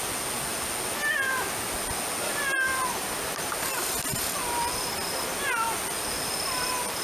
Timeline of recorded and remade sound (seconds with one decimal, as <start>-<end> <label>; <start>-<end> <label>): 0.0-7.0 recorded